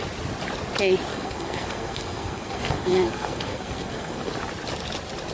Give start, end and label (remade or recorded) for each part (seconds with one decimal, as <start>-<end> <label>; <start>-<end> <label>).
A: 0.0-1.1 recorded; 1.1-4.3 remade; 4.3-5.3 recorded

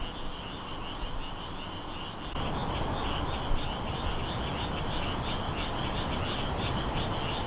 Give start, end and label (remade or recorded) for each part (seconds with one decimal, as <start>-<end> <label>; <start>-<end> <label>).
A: 0.0-7.5 recorded

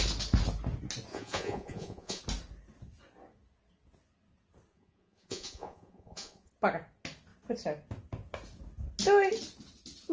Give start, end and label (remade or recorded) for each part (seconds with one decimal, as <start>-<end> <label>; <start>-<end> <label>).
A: 0.0-1.1 recorded; 1.1-2.2 remade; 2.2-4.7 recorded; 4.7-6.5 remade; 6.5-10.1 recorded

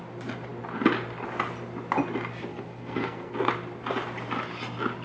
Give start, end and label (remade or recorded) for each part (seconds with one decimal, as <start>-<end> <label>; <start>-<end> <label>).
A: 0.0-2.5 recorded; 2.5-3.5 remade; 3.5-5.0 recorded

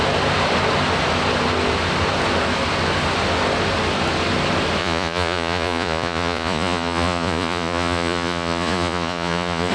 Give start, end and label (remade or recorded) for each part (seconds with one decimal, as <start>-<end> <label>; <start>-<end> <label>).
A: 0.0-4.8 recorded; 4.8-9.7 remade

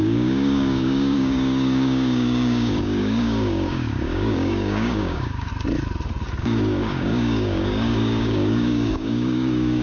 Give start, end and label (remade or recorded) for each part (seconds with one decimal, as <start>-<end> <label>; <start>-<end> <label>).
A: 0.0-5.5 remade; 5.5-6.4 recorded; 6.4-9.8 remade

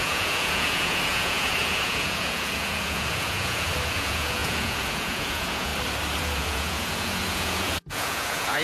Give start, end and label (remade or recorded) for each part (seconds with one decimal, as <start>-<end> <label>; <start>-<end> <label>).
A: 0.0-5.7 remade; 5.7-6.2 recorded; 6.2-8.6 remade

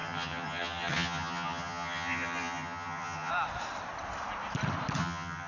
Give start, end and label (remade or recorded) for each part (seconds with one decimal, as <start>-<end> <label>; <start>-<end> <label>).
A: 0.0-3.3 remade; 3.3-5.0 recorded; 5.0-5.5 remade